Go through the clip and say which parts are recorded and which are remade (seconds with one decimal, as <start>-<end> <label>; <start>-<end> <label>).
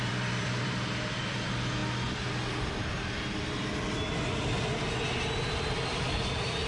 0.0-1.8 remade; 1.8-5.4 recorded; 5.4-6.7 remade